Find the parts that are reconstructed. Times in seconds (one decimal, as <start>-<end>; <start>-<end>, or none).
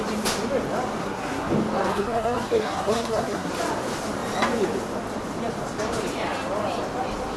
1.0-1.5; 1.9-3.5